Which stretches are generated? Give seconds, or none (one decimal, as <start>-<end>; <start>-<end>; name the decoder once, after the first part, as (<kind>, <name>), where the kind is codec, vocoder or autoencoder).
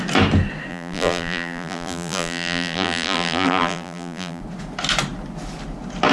0.7-4.4 (vocoder, BigVGAN v2)